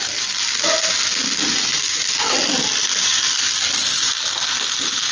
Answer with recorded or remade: remade